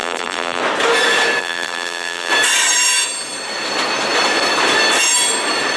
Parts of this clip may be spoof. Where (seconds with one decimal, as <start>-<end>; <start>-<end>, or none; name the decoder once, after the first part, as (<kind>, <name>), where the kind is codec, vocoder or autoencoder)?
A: 0.0-0.6 (vocoder, BigVGAN v2); 1.4-2.3